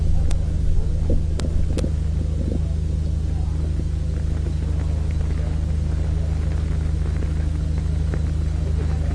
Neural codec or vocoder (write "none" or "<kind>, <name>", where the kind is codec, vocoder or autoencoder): none